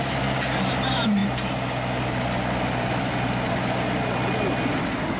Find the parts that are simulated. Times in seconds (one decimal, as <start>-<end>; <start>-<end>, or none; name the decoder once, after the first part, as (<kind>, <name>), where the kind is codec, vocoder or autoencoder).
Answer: none